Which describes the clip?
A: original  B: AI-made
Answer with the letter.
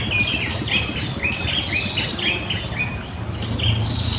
A